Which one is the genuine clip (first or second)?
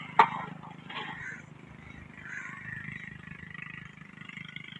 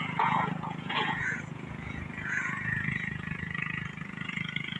first